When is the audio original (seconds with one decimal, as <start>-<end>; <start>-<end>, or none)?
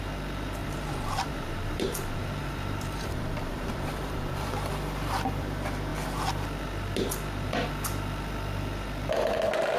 0.0-0.6; 4.7-9.8